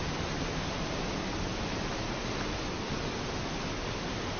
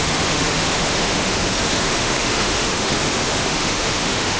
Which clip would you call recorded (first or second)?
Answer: first